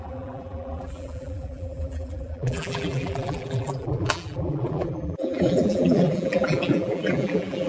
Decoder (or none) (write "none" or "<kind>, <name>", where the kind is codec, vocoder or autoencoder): vocoder, BigVGAN v2